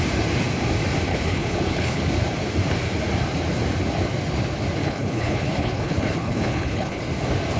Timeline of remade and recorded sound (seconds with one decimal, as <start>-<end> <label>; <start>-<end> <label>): 0.0-1.1 recorded; 1.1-2.0 remade; 2.0-4.8 recorded; 4.8-7.0 remade; 7.0-7.6 recorded